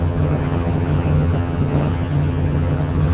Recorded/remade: remade